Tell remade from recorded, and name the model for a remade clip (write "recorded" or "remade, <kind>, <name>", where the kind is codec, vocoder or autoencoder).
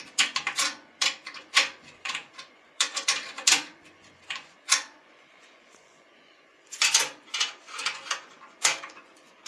remade, vocoder, Vocos